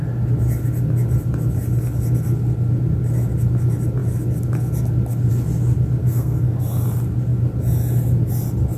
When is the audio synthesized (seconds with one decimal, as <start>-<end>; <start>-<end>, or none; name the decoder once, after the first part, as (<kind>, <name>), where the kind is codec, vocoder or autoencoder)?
6.0-6.6 (codec, SNAC)